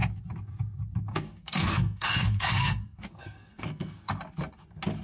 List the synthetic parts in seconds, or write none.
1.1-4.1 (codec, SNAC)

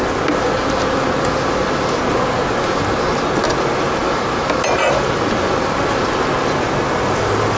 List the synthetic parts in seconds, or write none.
none

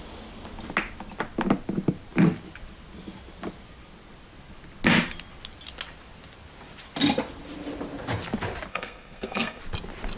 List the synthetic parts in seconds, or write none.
8.7-9.6 (codec, SNAC)

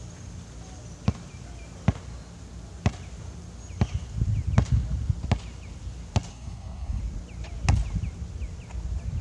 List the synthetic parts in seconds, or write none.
6.3-7.0 (codec, SNAC)

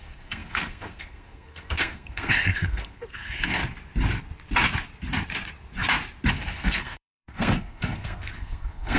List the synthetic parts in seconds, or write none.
0.0-3.6 (codec, SNAC); 6.3-9.0